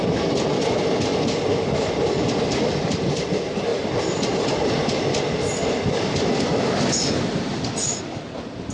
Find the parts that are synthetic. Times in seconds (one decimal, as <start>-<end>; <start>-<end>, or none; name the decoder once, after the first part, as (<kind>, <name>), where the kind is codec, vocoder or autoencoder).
0.0-8.7 (vocoder, BigVGAN v2)